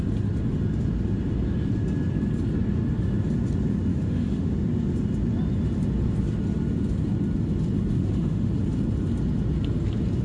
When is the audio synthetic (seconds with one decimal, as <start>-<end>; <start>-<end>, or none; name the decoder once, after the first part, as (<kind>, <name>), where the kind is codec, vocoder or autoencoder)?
3.9-4.5 (autoencoder, DAC-VAE); 8.0-8.5